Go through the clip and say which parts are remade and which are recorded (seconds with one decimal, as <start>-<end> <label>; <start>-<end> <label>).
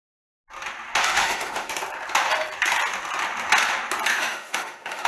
0.0-1.0 recorded; 1.0-1.7 remade; 1.7-4.1 recorded; 4.1-5.1 remade